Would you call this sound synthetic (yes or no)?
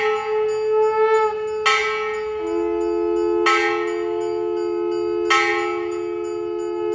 no